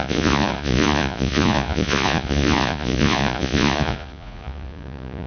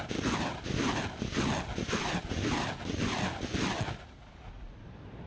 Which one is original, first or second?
second